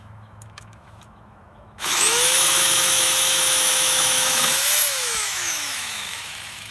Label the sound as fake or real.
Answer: fake